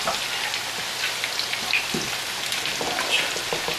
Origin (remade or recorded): recorded